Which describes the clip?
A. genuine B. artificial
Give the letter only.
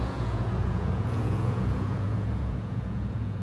B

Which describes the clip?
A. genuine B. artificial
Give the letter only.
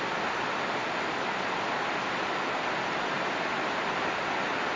A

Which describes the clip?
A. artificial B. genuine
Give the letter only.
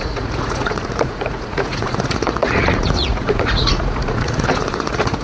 A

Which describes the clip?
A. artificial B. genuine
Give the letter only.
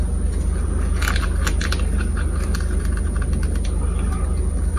B